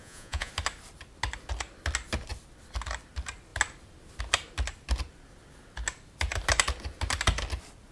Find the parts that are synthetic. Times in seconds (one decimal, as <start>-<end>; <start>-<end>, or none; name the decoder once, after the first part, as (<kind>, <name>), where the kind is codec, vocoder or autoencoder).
0.0-0.5 (vocoder, Vocos)